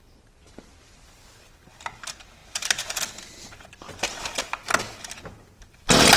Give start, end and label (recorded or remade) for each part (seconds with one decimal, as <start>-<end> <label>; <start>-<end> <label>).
0.0-6.2 recorded